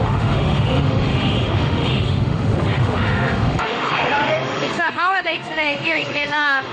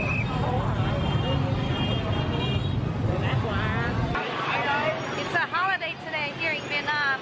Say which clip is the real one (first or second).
second